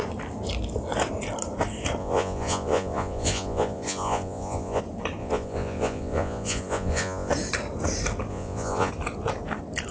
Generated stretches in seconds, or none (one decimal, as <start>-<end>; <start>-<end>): 2.0-4.8; 5.2-7.3; 8.3-8.9